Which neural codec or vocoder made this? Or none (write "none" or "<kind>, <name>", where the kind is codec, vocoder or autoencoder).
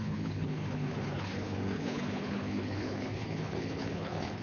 codec, HILCodec